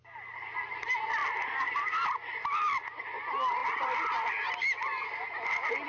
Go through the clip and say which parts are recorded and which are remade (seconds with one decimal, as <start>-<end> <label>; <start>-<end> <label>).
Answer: 0.0-5.9 recorded